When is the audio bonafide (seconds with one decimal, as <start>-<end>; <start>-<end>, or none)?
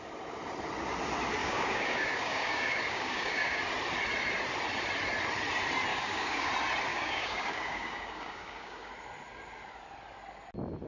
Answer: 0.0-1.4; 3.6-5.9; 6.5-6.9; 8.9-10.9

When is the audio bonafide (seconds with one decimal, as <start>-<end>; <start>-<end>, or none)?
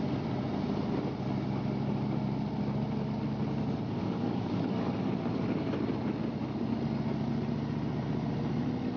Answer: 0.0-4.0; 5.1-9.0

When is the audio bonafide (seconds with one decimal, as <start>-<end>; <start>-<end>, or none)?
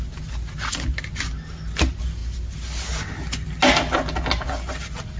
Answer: 0.0-5.2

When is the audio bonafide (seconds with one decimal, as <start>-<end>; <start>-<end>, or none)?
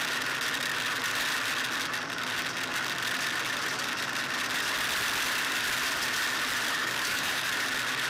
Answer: 0.0-6.8; 7.5-8.1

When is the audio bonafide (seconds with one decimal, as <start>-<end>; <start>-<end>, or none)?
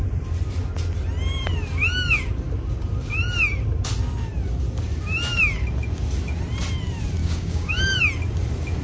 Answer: 0.0-7.2; 8.0-8.8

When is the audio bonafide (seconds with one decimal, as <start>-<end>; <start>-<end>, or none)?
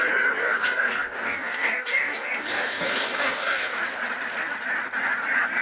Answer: 0.0-0.4; 3.8-5.6